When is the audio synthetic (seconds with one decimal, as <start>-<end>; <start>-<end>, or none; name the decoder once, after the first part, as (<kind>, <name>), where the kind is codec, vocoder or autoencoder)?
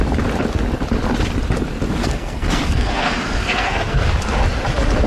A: 2.0-4.1 (codec, SNAC)